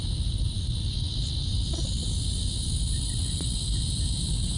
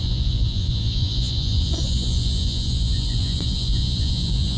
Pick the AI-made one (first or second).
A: second